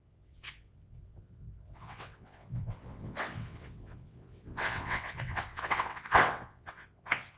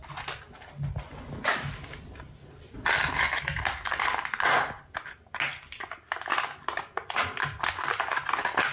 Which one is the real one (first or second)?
second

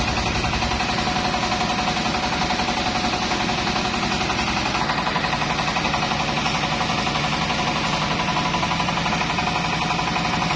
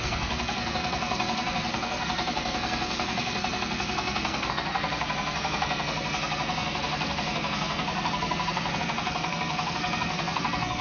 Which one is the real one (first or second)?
first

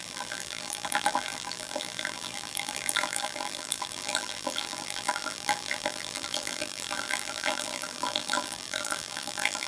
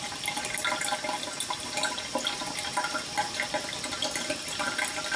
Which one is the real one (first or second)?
second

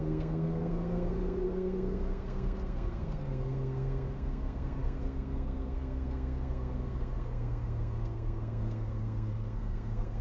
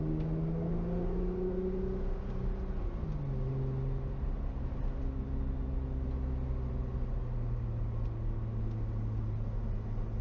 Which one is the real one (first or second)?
second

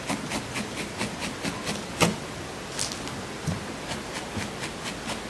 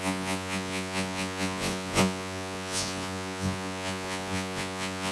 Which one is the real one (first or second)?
first